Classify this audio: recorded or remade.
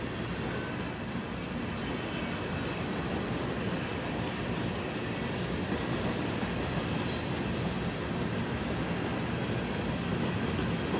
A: recorded